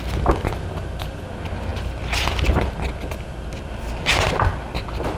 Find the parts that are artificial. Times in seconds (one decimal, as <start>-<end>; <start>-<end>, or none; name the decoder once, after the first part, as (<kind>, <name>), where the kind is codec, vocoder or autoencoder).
none